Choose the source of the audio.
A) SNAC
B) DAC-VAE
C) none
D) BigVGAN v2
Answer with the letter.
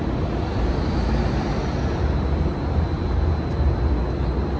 C